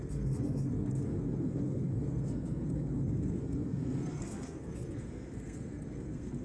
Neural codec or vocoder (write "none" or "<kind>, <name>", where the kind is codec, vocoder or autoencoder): codec, SNAC